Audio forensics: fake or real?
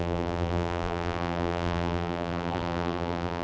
fake